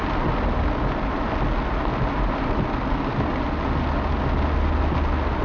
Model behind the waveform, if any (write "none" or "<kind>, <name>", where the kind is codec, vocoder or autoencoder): none